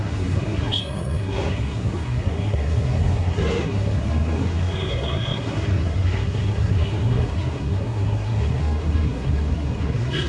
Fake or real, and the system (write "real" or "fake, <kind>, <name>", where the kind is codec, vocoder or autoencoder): fake, codec, SNAC